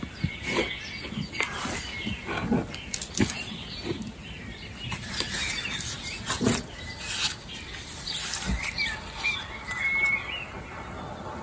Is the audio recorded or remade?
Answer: recorded